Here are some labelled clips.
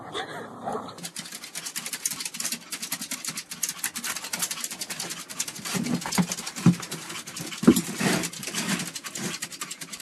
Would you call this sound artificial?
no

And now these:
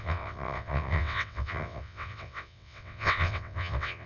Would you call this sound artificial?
yes